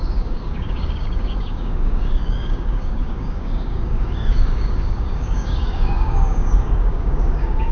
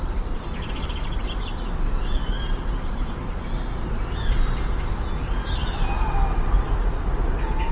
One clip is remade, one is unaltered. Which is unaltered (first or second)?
second